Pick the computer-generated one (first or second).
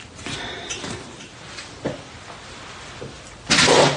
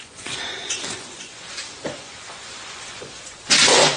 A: second